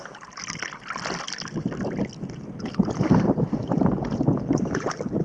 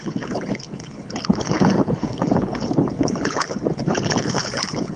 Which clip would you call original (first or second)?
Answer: first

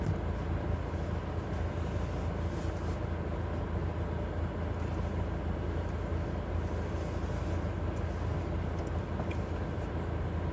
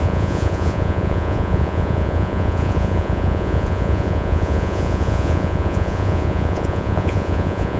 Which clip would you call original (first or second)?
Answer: first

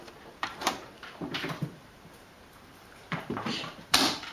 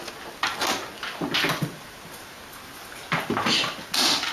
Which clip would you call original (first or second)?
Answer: second